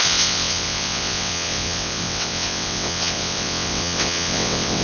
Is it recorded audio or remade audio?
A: remade